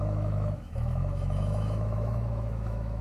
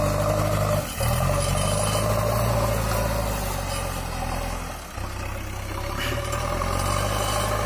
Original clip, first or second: second